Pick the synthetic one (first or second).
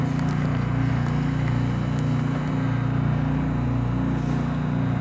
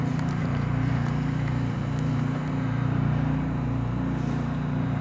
second